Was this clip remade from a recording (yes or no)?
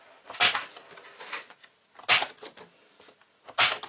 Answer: no